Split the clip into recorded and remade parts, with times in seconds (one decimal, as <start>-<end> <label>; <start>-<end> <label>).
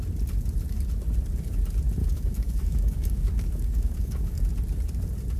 0.0-2.0 recorded; 2.0-4.4 remade; 4.4-5.4 recorded